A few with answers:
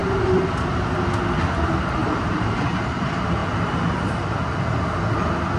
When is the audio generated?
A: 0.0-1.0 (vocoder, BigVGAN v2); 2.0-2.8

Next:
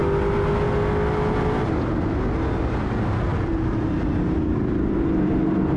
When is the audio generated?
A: 2.6-5.8 (vocoder, BigVGAN v2)

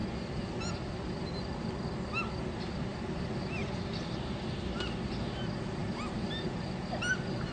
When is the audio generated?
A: 5.8-6.5 (vocoder, BigVGAN v2)